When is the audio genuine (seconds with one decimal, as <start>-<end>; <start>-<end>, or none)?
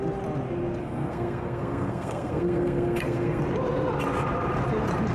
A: 0.0-0.8; 3.4-5.1